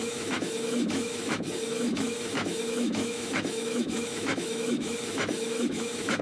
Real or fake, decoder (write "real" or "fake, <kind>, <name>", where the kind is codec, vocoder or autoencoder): fake, autoencoder, DAC-VAE